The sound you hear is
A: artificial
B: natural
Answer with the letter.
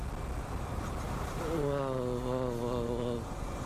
B